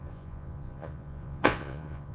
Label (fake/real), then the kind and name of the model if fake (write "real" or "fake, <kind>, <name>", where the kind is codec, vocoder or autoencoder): fake, vocoder, Vocos